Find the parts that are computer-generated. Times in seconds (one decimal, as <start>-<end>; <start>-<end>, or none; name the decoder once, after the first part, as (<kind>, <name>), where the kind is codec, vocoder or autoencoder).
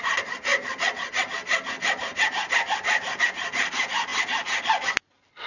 none